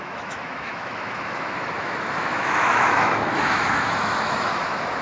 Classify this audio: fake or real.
fake